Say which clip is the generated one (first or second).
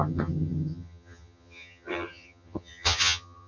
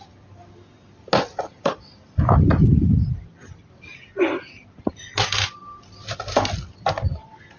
first